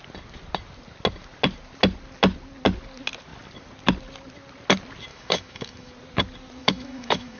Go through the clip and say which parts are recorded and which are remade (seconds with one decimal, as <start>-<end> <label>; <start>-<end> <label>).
0.0-5.1 recorded; 5.1-5.9 remade; 5.9-6.6 recorded; 6.6-7.4 remade